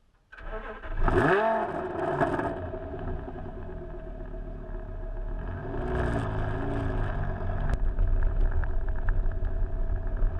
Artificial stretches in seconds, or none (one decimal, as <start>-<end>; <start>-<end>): 8.6-9.2